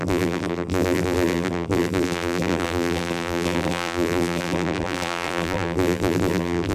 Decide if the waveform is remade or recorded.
remade